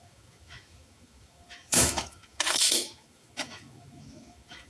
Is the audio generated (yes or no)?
yes